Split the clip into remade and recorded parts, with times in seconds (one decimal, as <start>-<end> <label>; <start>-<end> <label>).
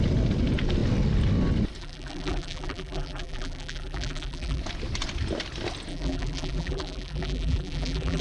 0.0-1.8 recorded; 1.8-4.6 remade; 4.6-5.9 recorded; 5.9-8.2 remade